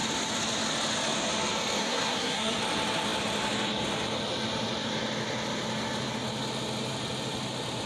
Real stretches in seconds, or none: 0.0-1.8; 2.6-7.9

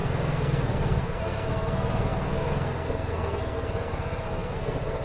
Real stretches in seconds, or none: none